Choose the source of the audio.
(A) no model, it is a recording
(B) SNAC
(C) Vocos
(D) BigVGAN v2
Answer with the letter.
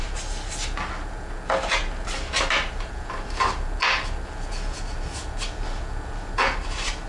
A